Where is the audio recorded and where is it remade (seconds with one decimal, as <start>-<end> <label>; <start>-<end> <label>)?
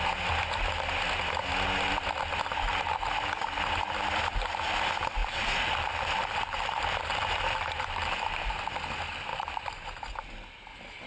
0.0-5.2 recorded; 5.2-8.5 remade; 8.5-9.3 recorded; 9.3-10.1 remade; 10.1-11.1 recorded